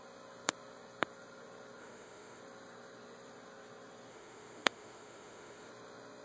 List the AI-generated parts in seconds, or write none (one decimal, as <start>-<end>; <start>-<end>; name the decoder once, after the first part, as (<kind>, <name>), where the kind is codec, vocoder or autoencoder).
1.8-2.4 (autoencoder, DAC-VAE); 4.1-5.7